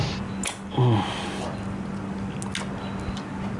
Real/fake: real